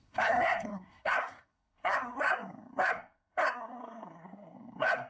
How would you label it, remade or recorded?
remade